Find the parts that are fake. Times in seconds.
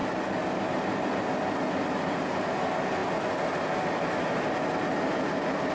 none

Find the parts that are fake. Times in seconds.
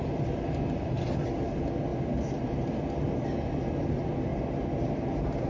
none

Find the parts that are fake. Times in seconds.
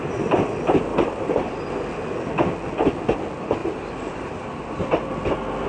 0.9-1.5 (vocoder, BigVGAN v2); 3.6-4.6